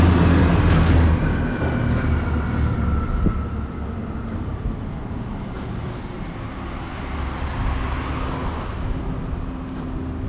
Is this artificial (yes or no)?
no